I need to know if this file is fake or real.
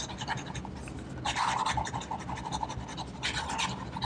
real